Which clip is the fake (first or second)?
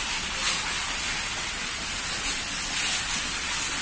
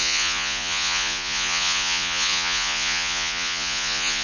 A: second